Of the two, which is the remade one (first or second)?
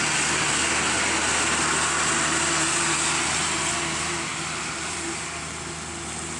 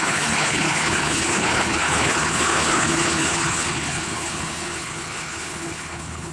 second